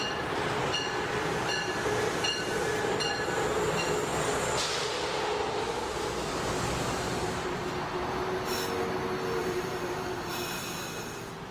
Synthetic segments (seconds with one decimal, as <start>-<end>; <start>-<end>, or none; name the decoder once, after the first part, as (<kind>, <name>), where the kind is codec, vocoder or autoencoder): 9.4-10.3 (vocoder, BigVGAN v2)